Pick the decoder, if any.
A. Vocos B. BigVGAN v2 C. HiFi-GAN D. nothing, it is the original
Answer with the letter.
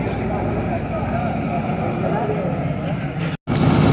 D